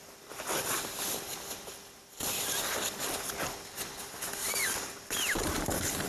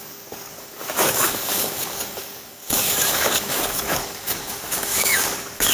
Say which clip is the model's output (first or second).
second